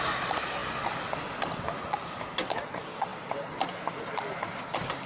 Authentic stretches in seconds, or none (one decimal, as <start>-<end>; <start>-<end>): 0.0-5.1